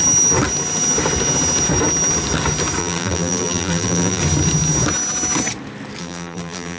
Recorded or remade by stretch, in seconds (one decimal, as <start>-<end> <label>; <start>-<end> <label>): 0.0-2.8 recorded; 2.8-4.2 remade; 4.2-6.0 recorded; 6.0-6.8 remade